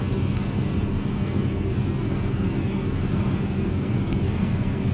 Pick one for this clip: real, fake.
fake